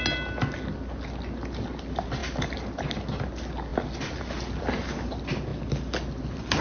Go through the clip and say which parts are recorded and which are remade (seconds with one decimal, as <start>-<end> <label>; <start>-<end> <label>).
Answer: 0.0-6.6 recorded